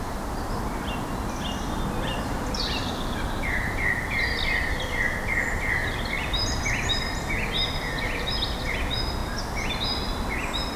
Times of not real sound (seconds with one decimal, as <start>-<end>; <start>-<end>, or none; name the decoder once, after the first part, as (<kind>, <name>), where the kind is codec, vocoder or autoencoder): 5.8-6.6 (vocoder, BigVGAN v2)